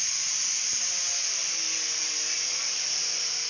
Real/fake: fake